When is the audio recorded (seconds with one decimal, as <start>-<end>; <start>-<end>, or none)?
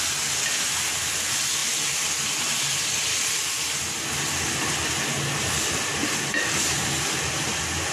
0.0-7.9